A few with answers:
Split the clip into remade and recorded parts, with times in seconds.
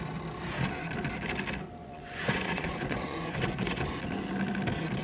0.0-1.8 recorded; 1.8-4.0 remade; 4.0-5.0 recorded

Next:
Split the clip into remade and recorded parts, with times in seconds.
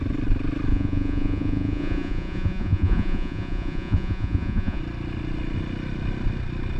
0.0-0.7 recorded; 0.7-4.8 remade; 4.8-6.8 recorded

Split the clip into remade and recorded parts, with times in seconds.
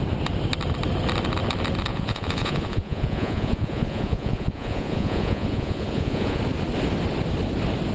0.0-1.9 recorded; 1.9-6.4 remade; 6.4-7.9 recorded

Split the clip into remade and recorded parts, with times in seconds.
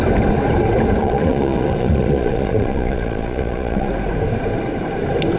0.0-1.0 recorded; 1.0-3.9 remade; 3.9-5.4 recorded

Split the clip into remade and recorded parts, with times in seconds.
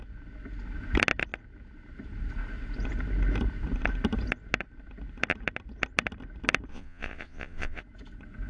0.0-6.7 recorded; 6.7-7.8 remade; 7.8-8.5 recorded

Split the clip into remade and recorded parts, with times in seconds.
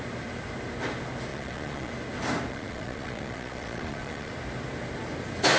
0.0-1.3 recorded; 1.3-1.9 remade; 1.9-2.5 recorded; 2.5-4.3 remade; 4.3-5.6 recorded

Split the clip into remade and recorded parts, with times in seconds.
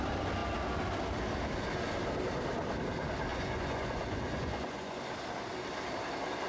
0.0-3.3 recorded; 3.3-5.0 remade; 5.0-6.5 recorded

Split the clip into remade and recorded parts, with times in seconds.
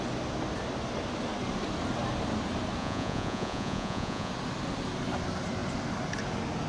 0.0-2.8 recorded; 2.8-4.3 remade; 4.3-6.7 recorded